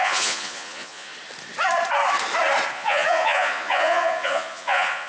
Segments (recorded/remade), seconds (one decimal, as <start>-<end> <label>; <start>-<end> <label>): 0.0-1.1 remade; 1.1-2.7 recorded; 2.7-5.1 remade